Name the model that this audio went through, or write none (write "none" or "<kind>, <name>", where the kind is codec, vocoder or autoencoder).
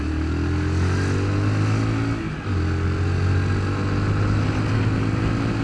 none